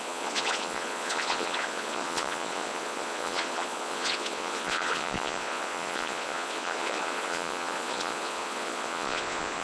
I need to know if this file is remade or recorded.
remade